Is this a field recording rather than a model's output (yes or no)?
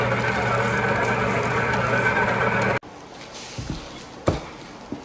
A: yes